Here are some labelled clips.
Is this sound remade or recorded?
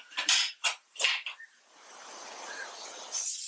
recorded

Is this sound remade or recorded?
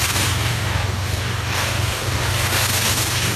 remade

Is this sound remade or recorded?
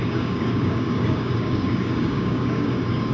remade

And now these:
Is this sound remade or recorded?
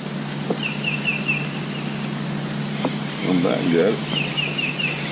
recorded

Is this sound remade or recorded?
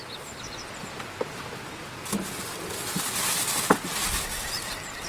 recorded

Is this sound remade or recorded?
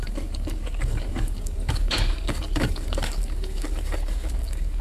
remade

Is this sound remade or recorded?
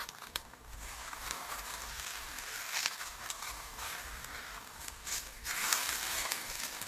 remade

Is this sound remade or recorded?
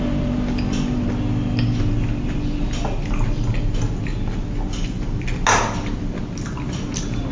recorded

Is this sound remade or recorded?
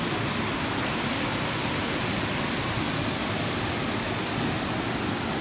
recorded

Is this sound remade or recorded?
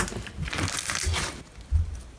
recorded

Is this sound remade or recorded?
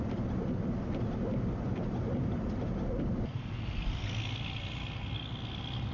recorded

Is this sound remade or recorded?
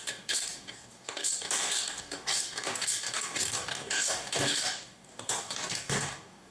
remade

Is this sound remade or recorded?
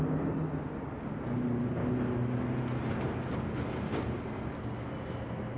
recorded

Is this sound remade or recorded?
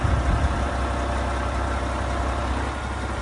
recorded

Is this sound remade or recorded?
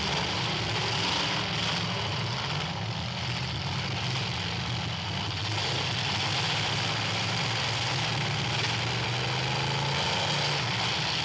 recorded